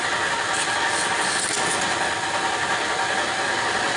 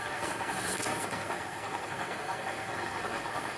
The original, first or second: first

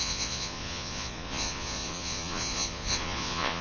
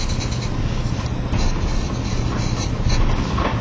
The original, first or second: second